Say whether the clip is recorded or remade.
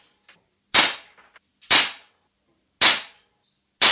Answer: recorded